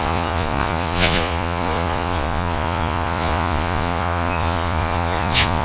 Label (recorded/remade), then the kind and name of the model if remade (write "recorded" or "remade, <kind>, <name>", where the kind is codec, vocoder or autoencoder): remade, vocoder, Vocos